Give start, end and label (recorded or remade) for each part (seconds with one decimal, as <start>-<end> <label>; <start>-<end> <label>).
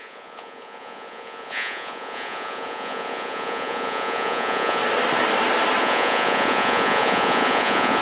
0.0-4.8 remade; 4.8-5.8 recorded; 5.8-8.0 remade